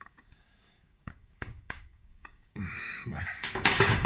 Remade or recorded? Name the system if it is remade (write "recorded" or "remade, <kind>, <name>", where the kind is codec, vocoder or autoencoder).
remade, codec, DAC